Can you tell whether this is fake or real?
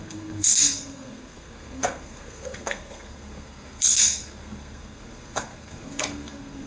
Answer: fake